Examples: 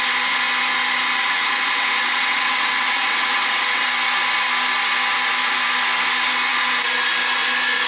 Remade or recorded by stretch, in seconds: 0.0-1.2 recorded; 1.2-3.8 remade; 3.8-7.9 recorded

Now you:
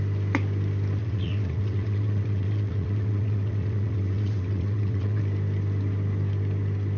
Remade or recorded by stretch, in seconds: 0.0-1.0 recorded; 1.0-5.2 remade; 5.2-7.0 recorded

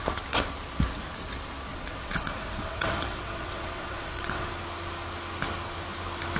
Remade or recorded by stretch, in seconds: 0.0-1.7 recorded; 1.7-4.5 remade; 4.5-6.4 recorded

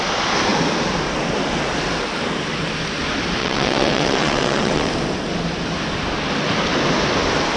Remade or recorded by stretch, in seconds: 0.0-3.4 recorded; 3.4-4.9 remade; 4.9-7.6 recorded

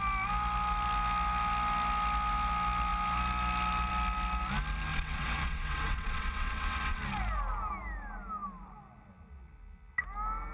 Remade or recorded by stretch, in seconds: 0.0-4.9 recorded; 4.9-7.0 remade; 7.0-10.5 recorded